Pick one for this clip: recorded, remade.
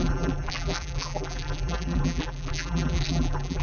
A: remade